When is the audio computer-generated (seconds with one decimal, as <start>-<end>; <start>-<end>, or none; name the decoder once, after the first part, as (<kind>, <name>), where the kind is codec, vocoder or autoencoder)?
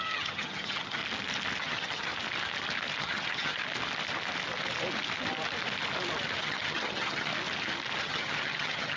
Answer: 0.0-1.0 (vocoder, HiFi-GAN); 1.6-2.1; 3.0-3.6; 6.4-7.3; 8.0-9.0